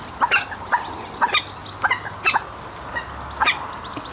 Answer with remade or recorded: recorded